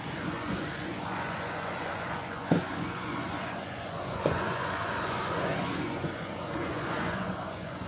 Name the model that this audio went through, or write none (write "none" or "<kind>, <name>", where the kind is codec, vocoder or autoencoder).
vocoder, Vocos